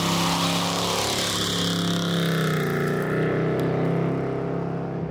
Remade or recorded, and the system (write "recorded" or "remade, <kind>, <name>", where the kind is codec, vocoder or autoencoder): recorded